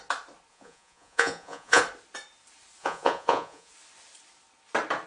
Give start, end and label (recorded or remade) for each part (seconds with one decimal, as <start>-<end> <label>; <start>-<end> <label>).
0.0-0.5 recorded; 0.5-1.8 remade; 1.8-2.8 recorded; 2.8-3.7 remade; 3.7-5.1 recorded